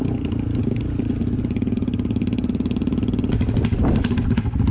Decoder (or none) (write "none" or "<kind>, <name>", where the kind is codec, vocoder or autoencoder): none